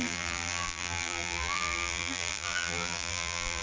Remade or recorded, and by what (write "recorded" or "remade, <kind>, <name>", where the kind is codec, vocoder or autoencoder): remade, vocoder, BigVGAN v2